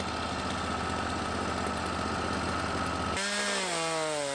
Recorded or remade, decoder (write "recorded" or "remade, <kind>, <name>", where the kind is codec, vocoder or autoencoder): recorded